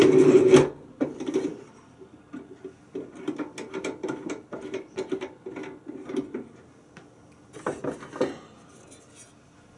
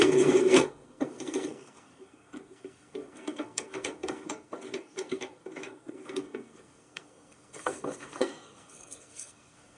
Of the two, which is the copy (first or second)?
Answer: second